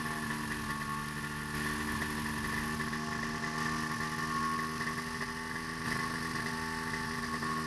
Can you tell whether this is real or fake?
real